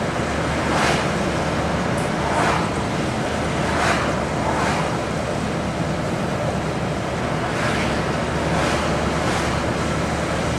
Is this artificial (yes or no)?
no